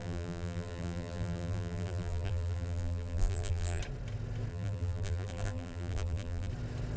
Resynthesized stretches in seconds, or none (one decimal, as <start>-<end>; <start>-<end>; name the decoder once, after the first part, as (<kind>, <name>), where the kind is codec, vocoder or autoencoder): 0.0-3.8 (vocoder, BigVGAN v2); 4.5-6.5